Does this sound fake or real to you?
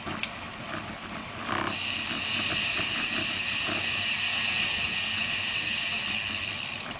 real